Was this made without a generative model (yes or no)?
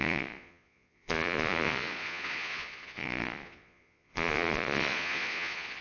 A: no